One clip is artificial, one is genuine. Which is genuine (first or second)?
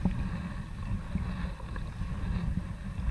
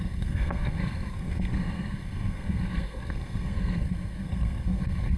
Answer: first